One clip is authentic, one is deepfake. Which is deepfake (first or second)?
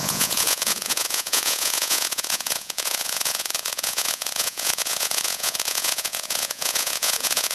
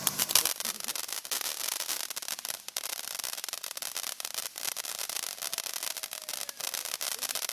first